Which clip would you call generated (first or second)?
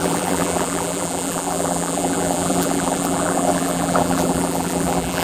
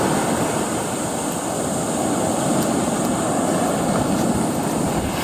first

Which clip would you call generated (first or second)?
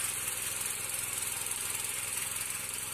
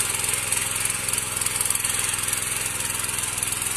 first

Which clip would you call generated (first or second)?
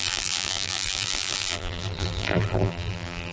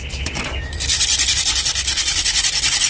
first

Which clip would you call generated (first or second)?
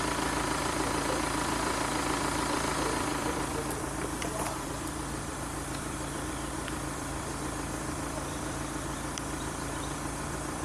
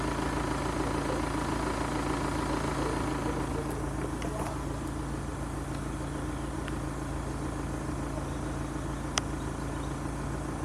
first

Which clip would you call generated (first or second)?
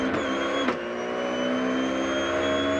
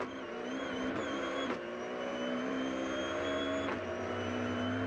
second